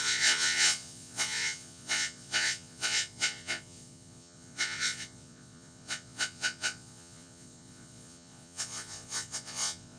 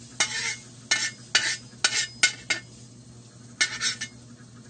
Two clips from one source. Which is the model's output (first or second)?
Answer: first